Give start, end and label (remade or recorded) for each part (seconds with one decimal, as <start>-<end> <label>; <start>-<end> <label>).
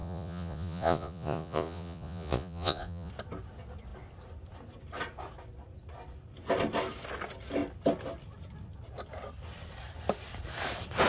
0.0-3.1 remade; 3.1-11.1 recorded